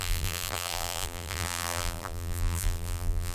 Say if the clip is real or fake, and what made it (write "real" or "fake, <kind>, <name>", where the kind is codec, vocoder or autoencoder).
fake, vocoder, BigVGAN v2